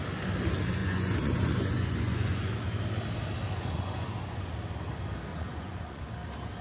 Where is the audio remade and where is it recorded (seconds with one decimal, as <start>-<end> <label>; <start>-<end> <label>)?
0.0-0.8 recorded; 0.8-2.5 remade; 2.5-3.6 recorded; 3.6-4.5 remade; 4.5-5.3 recorded; 5.3-6.0 remade; 6.0-6.6 recorded